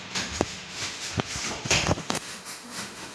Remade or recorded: remade